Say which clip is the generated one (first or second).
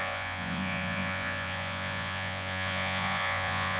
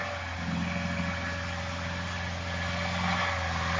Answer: first